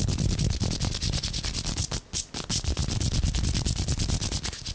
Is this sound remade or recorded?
recorded